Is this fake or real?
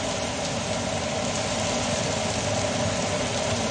real